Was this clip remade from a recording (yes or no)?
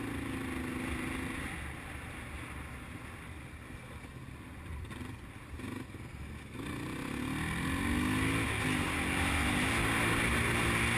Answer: no